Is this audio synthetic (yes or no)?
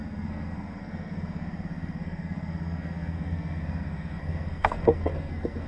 yes